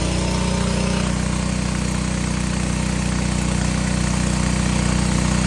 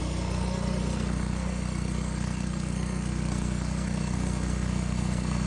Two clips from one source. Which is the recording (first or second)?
first